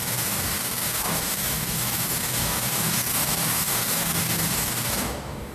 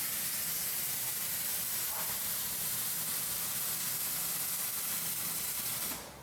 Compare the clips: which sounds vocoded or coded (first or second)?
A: first